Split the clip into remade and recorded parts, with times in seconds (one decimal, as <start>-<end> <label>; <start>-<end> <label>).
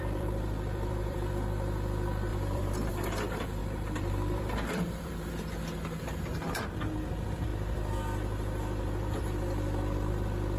0.0-1.3 remade; 1.3-2.3 recorded; 2.3-2.9 remade; 2.9-3.6 recorded; 3.6-5.3 remade; 5.3-10.6 recorded